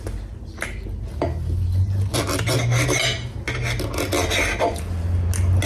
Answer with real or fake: real